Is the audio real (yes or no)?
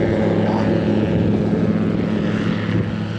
yes